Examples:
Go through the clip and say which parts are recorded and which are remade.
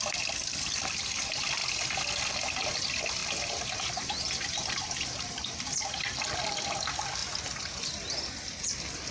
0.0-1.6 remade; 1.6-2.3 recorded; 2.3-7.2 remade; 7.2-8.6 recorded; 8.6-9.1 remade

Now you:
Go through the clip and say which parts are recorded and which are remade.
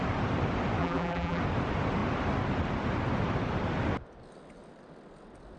0.0-0.8 recorded; 0.8-1.4 remade; 1.4-5.6 recorded